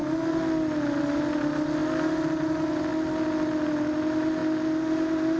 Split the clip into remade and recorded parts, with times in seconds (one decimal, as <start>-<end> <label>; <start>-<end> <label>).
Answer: 0.0-5.4 recorded